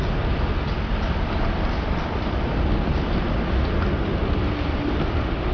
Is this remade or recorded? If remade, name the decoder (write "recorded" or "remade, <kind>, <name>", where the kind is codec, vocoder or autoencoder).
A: recorded